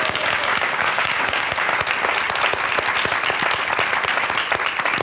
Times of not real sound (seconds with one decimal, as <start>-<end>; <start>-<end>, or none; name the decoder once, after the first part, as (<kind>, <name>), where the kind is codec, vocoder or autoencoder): 0.0-1.7 (codec, DAC)